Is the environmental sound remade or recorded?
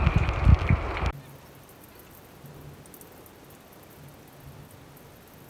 recorded